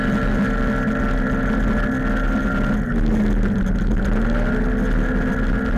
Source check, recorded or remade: recorded